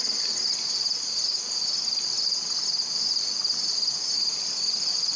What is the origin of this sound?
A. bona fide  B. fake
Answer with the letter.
A